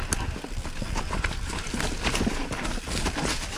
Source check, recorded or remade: recorded